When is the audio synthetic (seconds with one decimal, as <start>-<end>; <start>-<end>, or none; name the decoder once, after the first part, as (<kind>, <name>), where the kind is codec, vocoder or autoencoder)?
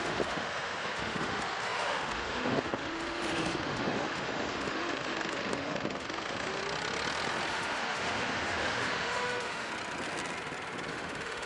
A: 0.0-6.6 (autoencoder, DAC-VAE); 7.5-9.7; 10.9-11.5